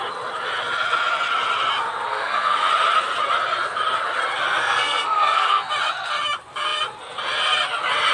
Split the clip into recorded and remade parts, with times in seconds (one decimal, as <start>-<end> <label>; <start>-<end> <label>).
0.0-2.1 recorded; 2.1-2.7 remade; 2.7-4.6 recorded; 4.6-5.7 remade; 5.7-8.1 recorded